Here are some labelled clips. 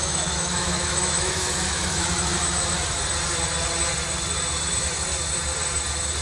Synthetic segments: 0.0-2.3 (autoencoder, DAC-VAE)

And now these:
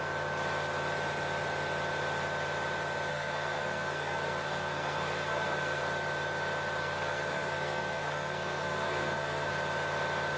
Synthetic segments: 3.1-5.8 (codec, SNAC); 6.8-9.5

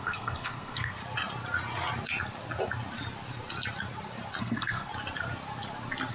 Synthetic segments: 0.0-1.0 (codec, SNAC); 4.4-4.9

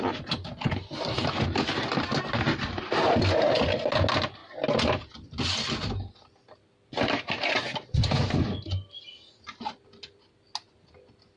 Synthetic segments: none